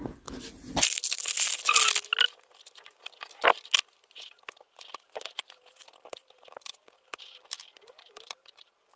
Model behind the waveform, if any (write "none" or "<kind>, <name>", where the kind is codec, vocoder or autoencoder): none